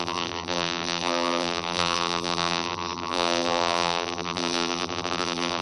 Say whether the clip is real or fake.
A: fake